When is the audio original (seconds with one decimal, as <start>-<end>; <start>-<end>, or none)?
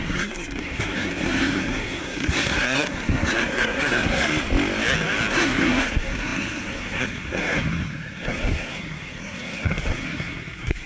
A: 4.3-5.3